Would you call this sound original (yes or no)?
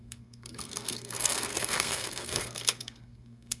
no